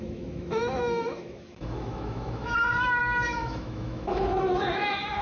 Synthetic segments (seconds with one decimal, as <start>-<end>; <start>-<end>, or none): 0.0-5.2